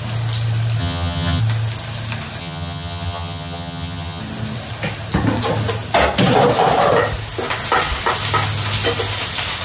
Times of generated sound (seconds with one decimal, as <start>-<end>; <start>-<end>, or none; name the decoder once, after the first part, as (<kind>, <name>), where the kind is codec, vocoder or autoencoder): 0.8-1.4 (vocoder, HiFi-GAN); 2.4-4.2